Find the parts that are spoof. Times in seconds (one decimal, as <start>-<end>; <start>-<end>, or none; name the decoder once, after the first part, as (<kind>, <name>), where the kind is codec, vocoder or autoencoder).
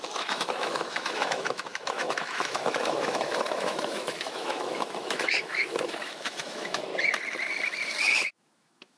0.0-6.9 (autoencoder, DAC-VAE); 8.0-9.0